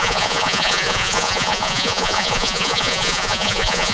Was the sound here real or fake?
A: fake